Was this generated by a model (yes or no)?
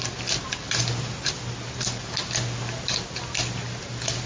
no